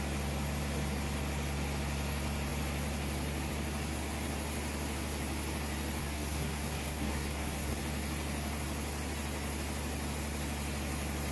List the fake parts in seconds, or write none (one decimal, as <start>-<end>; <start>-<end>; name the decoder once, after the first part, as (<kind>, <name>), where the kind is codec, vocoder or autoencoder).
6.0-7.8 (codec, SNAC)